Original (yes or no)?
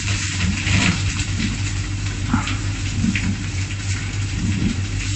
no